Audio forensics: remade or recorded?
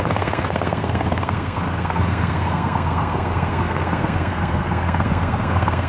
remade